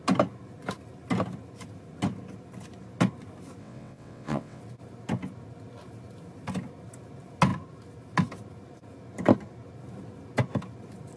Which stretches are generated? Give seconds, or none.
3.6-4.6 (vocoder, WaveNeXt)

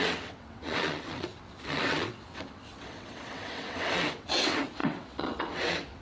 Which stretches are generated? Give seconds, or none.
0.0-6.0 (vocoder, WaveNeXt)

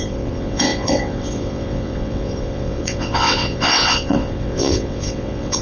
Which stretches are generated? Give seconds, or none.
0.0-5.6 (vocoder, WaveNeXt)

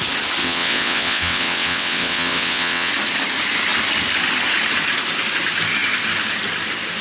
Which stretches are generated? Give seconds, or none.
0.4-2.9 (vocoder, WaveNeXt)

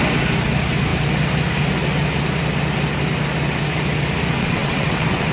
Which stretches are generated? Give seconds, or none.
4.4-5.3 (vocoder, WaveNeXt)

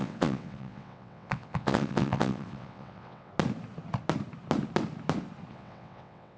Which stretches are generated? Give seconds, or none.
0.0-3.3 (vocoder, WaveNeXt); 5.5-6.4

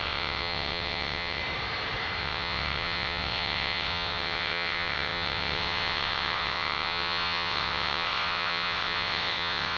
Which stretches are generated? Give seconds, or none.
0.0-1.4 (vocoder, WaveNeXt); 2.2-9.8